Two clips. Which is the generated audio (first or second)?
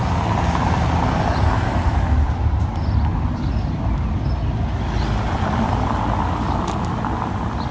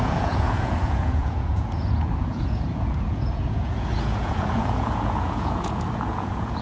second